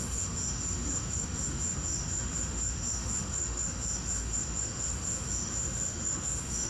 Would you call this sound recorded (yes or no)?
no